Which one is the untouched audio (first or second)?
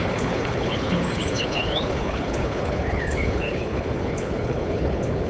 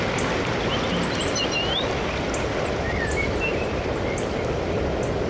second